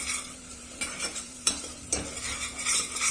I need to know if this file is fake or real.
fake